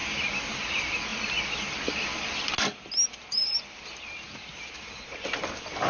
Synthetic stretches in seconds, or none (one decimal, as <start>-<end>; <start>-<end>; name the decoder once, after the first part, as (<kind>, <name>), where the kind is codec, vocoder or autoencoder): none